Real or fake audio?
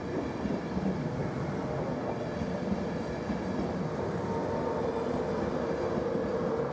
real